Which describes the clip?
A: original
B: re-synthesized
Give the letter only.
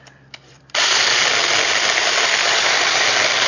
B